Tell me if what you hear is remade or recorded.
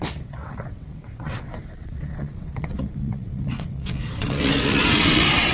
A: remade